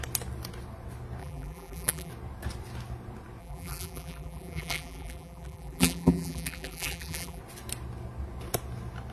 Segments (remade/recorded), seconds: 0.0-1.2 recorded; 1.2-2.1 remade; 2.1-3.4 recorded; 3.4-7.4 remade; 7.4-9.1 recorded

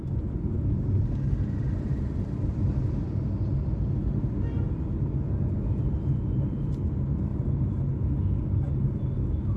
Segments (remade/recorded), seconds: 0.0-9.6 recorded

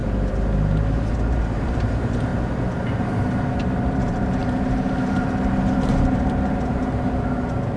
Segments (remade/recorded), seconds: 0.0-2.3 remade; 2.3-2.8 recorded; 2.8-7.8 remade